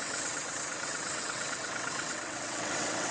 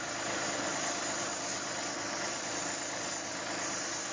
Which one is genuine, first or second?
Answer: second